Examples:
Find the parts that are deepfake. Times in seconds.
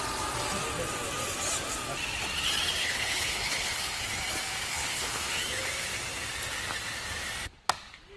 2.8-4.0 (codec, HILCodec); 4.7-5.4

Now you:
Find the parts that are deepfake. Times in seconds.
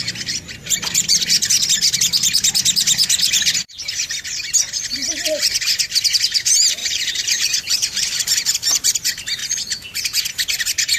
6.8-8.0 (vocoder, BigVGAN v2)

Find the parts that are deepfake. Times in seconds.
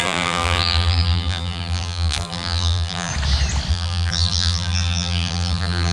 0.0-3.1 (vocoder, BigVGAN v2); 3.7-5.9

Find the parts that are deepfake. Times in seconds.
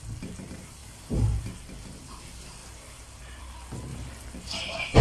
none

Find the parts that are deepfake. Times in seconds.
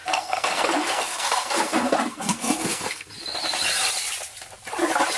0.0-3.1 (codec, SNAC)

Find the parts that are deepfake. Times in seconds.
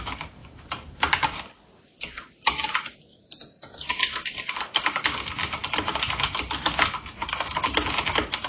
0.4-1.4 (vocoder, BigVGAN v2); 3.1-4.5; 5.4-5.9